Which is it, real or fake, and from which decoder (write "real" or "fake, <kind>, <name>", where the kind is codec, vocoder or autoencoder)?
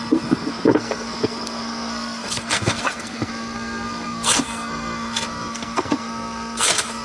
fake, codec, SNAC